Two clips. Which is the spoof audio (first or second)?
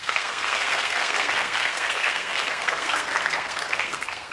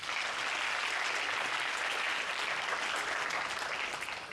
first